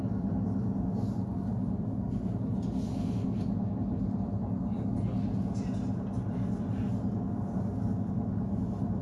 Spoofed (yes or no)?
no